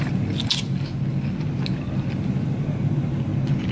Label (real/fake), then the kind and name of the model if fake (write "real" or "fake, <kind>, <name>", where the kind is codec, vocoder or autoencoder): real